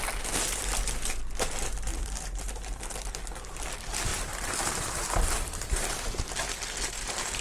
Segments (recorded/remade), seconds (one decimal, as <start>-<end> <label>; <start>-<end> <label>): 0.0-1.9 recorded; 1.9-2.4 remade; 2.4-4.1 recorded; 4.1-6.2 remade; 6.2-7.4 recorded